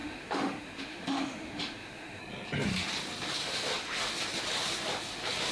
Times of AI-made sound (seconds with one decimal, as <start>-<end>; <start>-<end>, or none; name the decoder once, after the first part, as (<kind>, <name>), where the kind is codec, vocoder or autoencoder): 0.0-2.2 (autoencoder, DAC-VAE); 3.4-4.0

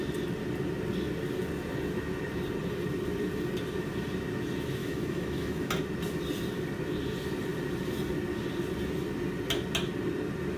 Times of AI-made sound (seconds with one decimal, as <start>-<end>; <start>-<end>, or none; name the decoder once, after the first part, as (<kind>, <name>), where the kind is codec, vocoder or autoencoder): 4.8-5.7 (autoencoder, DAC-VAE)

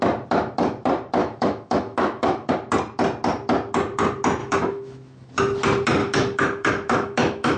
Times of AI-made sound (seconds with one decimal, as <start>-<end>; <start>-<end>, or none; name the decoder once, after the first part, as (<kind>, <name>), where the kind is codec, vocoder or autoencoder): 1.2-2.5 (autoencoder, DAC-VAE); 4.4-5.3; 6.0-7.6

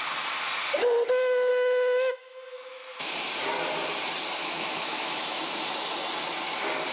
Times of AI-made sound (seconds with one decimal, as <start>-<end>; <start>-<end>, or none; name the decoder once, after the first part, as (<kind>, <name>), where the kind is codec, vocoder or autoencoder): 1.5-3.1 (autoencoder, DAC-VAE); 4.4-5.4

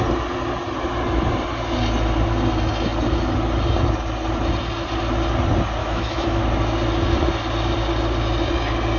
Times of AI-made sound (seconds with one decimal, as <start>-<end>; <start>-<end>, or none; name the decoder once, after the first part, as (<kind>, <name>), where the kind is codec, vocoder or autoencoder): 5.8-6.4 (autoencoder, DAC-VAE)

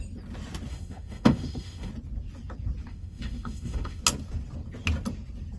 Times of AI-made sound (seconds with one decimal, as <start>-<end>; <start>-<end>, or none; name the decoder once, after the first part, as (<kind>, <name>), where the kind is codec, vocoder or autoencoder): 0.7-1.9 (autoencoder, DAC-VAE); 2.9-4.0

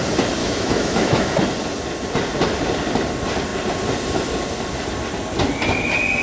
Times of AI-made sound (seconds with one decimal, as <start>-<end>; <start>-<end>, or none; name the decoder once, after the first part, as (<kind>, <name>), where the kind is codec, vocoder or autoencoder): 0.4-1.4 (autoencoder, DAC-VAE)